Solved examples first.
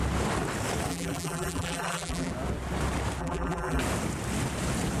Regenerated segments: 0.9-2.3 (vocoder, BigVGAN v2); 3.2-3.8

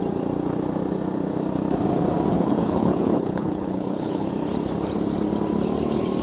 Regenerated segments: 2.3-4.3 (codec, HILCodec)

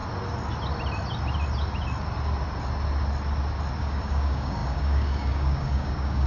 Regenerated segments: 3.8-6.3 (codec, DAC)

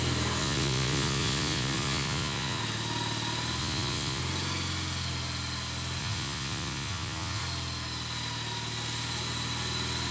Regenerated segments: 0.4-2.6 (vocoder, Vocos); 3.6-4.2; 6.0-7.4

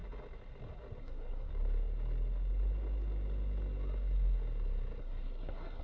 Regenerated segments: 1.0-1.5 (codec, SNAC); 5.0-5.8